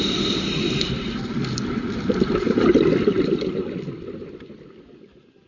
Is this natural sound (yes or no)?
yes